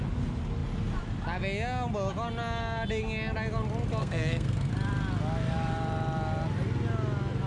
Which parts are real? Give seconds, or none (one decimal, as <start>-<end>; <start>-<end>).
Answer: 0.0-4.0; 4.7-7.5